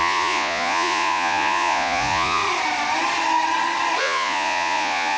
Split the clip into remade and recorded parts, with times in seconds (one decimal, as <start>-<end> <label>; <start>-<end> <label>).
0.0-2.4 remade; 2.4-4.0 recorded; 4.0-5.2 remade